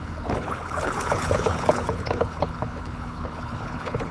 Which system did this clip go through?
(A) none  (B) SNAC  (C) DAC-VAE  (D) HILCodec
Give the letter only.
D